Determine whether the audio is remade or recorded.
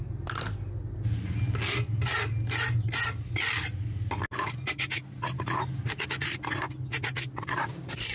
recorded